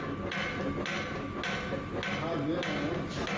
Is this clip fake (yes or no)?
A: no